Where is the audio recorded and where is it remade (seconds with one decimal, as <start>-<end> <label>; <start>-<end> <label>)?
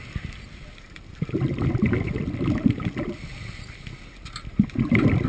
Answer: 0.0-5.3 recorded